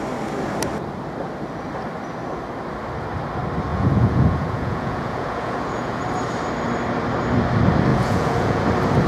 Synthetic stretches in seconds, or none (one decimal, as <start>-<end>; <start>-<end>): 3.7-6.0; 7.9-8.6